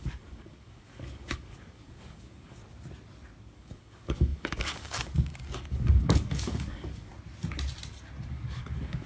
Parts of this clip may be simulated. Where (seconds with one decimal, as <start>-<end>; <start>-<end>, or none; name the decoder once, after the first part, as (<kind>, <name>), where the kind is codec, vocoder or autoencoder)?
0.0-2.6 (codec, DAC); 3.4-7.1; 8.3-9.1

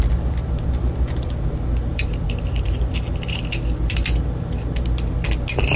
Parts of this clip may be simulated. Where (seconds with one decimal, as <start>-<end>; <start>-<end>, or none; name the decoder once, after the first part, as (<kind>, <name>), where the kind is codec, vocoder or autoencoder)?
1.9-3.4 (vocoder, BigVGAN v2)